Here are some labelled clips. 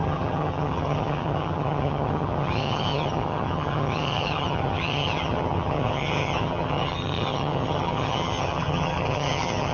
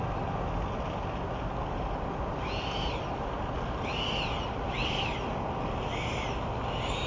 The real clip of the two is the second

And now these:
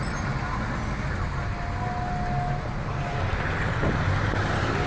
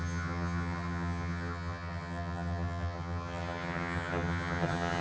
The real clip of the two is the first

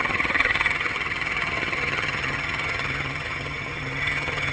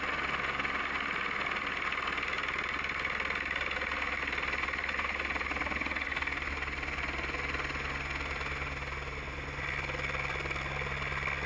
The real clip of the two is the second